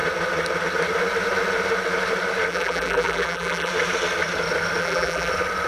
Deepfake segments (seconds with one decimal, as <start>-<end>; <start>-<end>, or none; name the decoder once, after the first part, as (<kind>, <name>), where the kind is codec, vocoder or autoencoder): 2.5-3.7 (vocoder, BigVGAN v2); 4.8-5.3

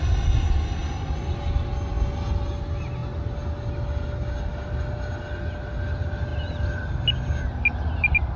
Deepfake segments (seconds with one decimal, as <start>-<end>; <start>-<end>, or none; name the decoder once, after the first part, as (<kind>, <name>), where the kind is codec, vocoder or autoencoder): none